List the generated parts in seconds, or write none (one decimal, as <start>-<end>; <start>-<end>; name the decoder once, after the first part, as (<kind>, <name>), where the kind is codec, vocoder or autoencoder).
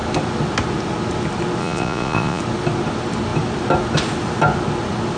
1.6-2.4 (vocoder, Vocos)